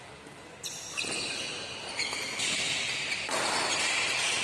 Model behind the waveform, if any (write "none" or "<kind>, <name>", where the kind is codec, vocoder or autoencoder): none